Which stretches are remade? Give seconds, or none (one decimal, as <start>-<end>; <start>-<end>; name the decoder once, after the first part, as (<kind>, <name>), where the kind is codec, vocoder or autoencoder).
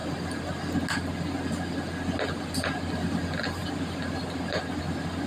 none